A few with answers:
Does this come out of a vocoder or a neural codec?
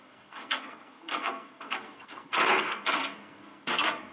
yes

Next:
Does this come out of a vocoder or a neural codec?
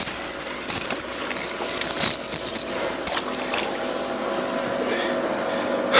no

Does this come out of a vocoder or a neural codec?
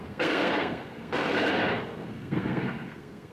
yes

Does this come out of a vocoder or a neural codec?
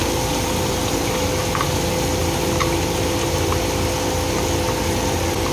no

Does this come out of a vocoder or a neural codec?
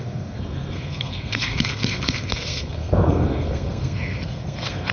yes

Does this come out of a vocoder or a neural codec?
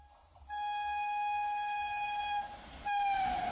no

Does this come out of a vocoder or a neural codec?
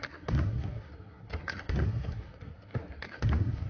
yes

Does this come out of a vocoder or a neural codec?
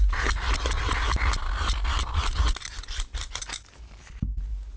no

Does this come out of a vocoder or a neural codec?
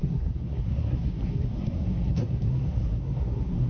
yes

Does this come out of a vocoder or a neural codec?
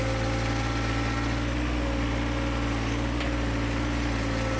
no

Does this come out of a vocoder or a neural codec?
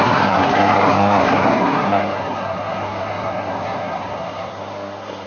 yes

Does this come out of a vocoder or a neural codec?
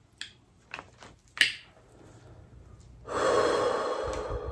no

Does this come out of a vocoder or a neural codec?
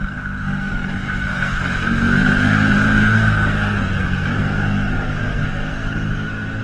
yes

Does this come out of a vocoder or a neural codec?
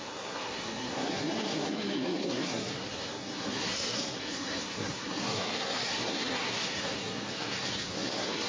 yes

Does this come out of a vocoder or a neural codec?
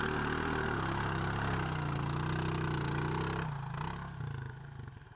no